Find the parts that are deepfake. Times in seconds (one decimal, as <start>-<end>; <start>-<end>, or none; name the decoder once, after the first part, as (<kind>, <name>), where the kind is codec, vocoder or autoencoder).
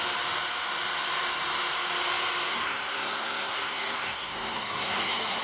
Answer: 2.5-5.4 (codec, SNAC)